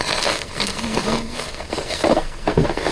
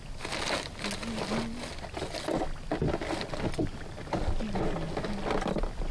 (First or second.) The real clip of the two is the second